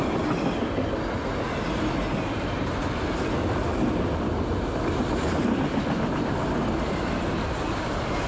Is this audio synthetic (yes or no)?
no